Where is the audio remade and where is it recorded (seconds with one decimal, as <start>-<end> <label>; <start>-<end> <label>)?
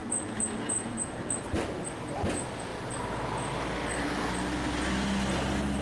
0.0-1.6 remade; 1.6-5.8 recorded